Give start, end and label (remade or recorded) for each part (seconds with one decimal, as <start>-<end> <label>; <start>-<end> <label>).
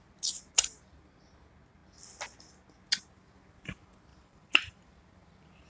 0.0-4.1 recorded; 4.1-4.9 remade; 4.9-5.7 recorded